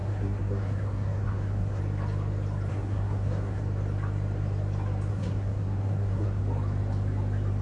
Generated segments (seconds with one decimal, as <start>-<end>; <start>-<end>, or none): 0.0-1.8; 2.7-3.6; 5.1-6.4